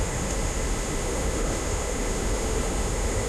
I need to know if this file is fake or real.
fake